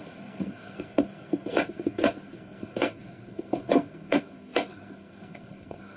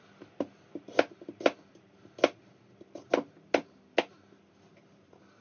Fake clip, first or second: first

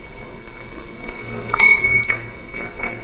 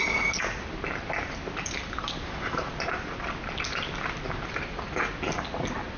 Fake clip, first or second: first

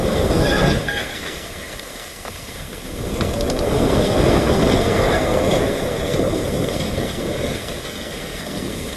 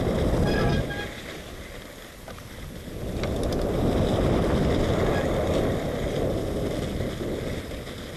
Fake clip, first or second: first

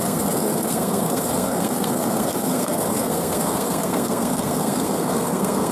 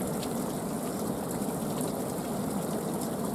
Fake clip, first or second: first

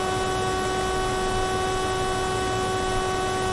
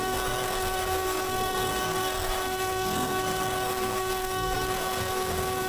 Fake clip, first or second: second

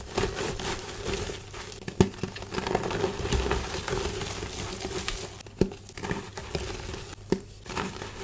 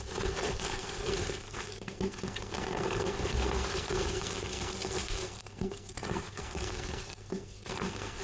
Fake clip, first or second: second